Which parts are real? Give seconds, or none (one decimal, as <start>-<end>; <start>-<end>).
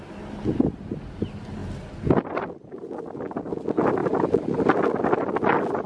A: 0.0-5.9